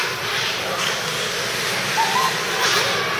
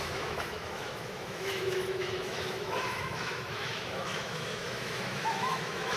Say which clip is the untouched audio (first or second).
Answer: first